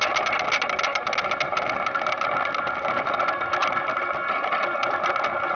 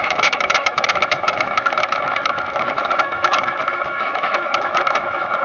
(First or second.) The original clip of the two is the first